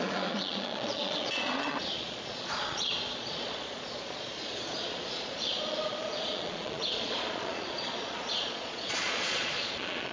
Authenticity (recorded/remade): remade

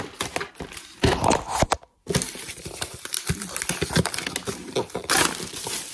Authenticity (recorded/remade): recorded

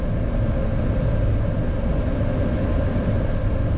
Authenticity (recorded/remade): recorded